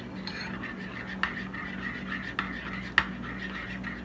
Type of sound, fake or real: real